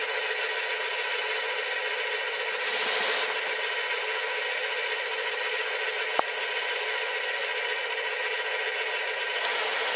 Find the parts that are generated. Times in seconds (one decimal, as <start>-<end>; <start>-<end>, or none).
none